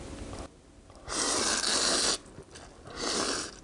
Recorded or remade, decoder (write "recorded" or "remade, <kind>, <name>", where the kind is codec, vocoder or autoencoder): recorded